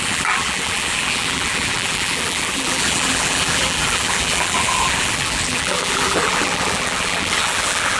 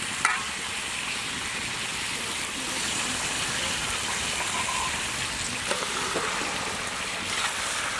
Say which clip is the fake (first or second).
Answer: first